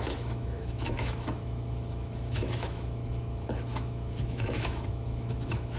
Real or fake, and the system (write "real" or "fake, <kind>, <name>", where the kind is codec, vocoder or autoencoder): fake, autoencoder, DAC-VAE